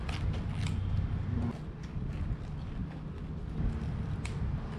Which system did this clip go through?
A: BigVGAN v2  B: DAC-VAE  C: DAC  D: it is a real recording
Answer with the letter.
D